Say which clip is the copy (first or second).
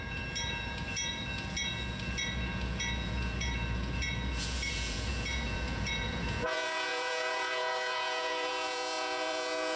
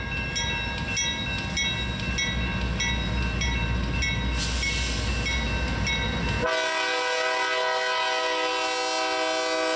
first